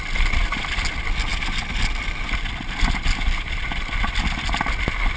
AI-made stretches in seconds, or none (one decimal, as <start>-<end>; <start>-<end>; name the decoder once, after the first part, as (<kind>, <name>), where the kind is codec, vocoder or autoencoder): none